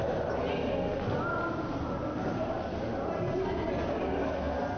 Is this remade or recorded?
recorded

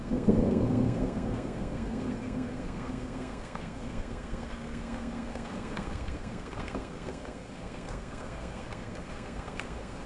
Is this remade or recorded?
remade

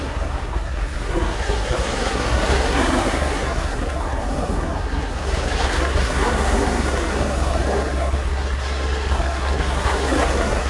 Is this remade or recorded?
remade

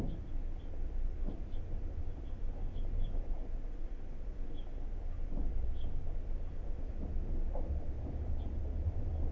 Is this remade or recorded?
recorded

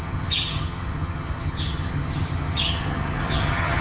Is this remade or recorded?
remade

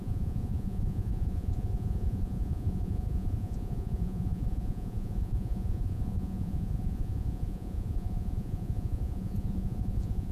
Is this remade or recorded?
remade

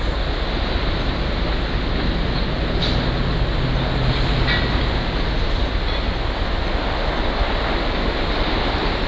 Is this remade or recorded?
recorded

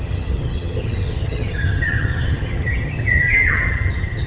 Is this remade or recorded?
remade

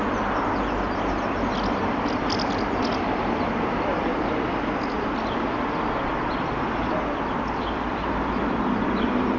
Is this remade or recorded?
recorded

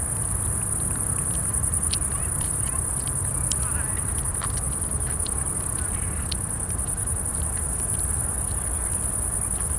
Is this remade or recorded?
recorded